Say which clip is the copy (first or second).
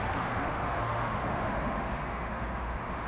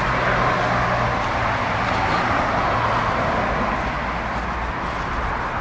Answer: first